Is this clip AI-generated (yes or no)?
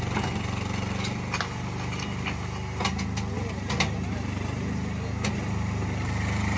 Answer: no